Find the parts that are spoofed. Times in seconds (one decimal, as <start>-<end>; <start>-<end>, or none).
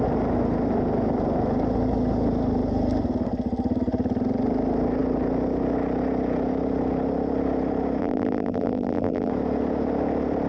8.0-9.3